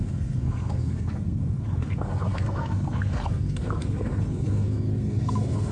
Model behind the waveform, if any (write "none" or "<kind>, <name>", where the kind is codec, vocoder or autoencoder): codec, SNAC